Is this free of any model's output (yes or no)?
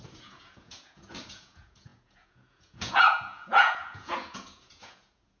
no